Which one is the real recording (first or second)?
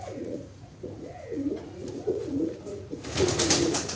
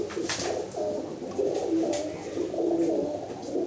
second